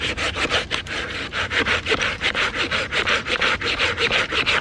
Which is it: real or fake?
fake